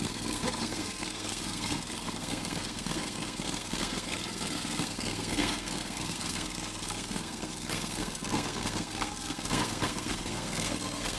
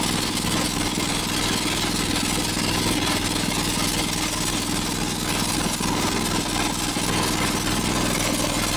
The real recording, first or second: second